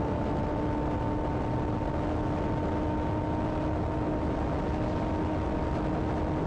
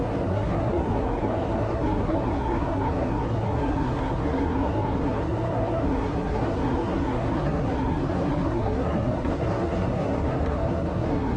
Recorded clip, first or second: first